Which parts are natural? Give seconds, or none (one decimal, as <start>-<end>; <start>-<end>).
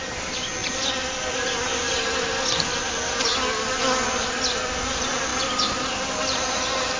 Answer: 0.0-7.0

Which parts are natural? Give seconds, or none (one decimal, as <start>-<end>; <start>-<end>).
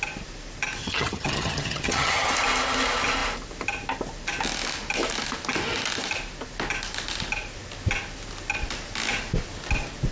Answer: 0.0-0.8; 2.3-10.1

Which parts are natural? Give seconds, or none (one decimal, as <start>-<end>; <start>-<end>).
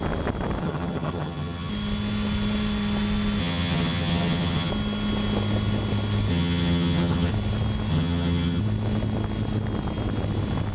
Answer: 0.0-0.6; 1.7-3.4; 4.7-6.3; 7.3-7.9; 8.6-10.7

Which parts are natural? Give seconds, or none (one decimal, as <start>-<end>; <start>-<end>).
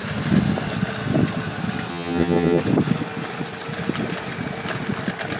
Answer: 0.0-1.9; 2.6-5.4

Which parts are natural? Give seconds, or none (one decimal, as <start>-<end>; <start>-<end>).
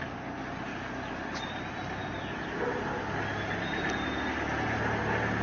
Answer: 0.0-5.4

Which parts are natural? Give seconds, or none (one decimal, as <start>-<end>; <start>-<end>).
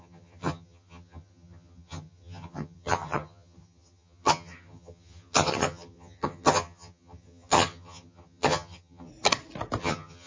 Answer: 9.1-9.8